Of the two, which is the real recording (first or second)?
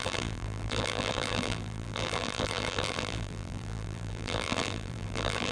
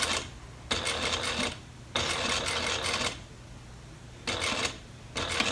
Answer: second